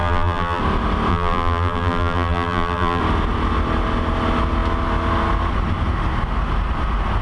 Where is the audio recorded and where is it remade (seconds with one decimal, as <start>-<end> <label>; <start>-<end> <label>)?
0.0-0.6 remade; 0.6-1.1 recorded; 1.1-3.0 remade; 3.0-7.2 recorded